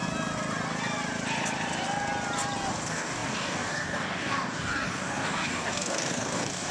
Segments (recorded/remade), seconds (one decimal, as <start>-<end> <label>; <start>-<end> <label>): 0.0-2.7 recorded; 2.7-6.7 remade